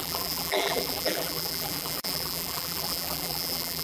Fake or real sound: fake